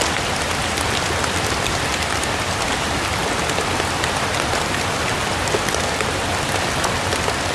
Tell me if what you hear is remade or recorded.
recorded